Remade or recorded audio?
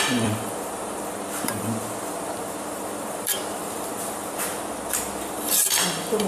remade